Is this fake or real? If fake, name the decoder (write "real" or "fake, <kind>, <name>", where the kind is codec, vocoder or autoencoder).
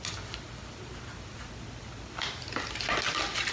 real